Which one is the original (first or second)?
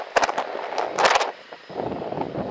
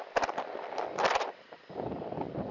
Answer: first